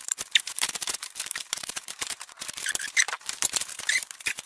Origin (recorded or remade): remade